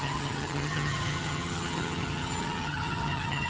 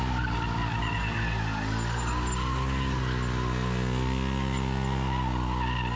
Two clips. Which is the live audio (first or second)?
second